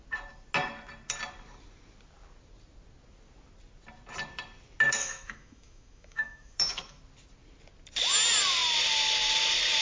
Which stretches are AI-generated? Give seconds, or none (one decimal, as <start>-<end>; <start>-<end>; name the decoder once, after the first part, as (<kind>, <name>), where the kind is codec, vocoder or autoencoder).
5.0-7.0 (autoencoder, DAC-VAE)